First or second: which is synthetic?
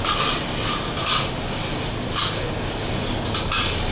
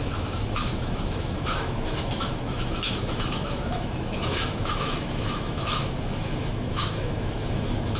second